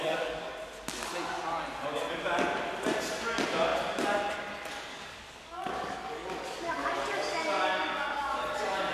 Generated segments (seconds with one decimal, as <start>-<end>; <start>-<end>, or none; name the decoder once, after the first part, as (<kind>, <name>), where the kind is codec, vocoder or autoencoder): 0.0-0.5 (codec, DAC); 4.9-8.4